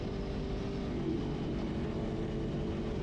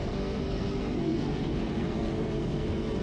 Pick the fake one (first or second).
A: second